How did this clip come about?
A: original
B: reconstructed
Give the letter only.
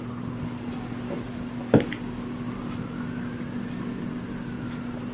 A